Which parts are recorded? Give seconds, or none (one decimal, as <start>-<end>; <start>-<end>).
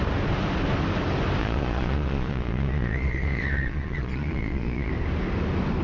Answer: 0.0-1.4; 4.9-5.8